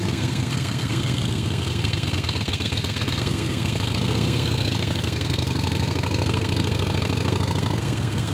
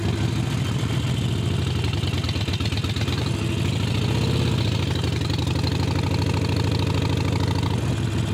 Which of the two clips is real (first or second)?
second